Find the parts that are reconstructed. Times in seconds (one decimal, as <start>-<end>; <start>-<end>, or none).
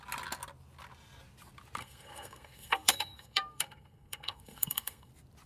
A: 1.8-5.1